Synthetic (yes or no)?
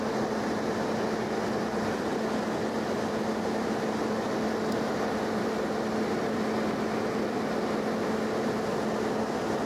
no